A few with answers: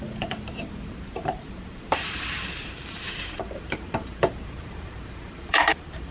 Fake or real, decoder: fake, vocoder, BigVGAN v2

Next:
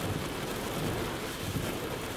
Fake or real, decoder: real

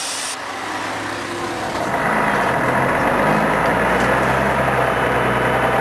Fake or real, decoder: real